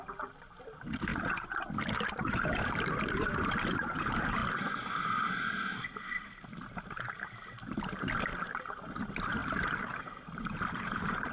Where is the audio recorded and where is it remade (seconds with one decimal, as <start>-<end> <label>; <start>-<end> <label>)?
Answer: 0.0-1.1 remade; 1.1-2.2 recorded; 2.2-4.4 remade; 4.4-8.2 recorded; 8.2-11.3 remade